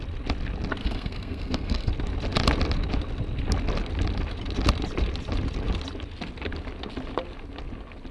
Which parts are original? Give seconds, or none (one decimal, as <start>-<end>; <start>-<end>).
0.0-0.8; 1.9-8.1